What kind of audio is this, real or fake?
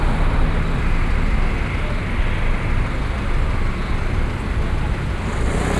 real